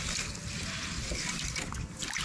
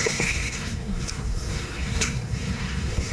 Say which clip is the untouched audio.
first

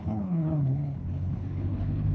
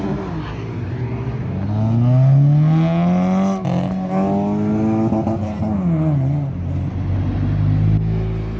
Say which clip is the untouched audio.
second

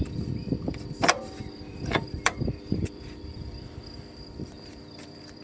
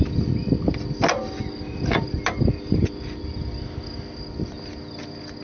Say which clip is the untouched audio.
second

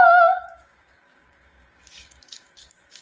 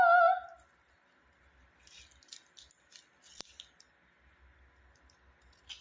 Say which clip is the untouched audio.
second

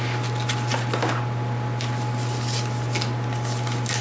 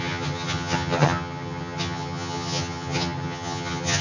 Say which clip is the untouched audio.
first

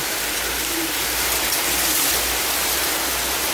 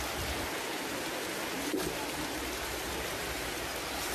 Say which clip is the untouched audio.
second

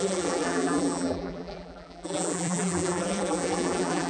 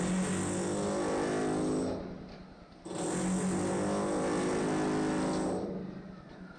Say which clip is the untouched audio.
second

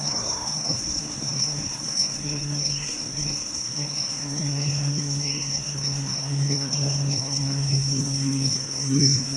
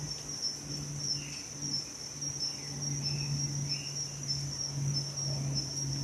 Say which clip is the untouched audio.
second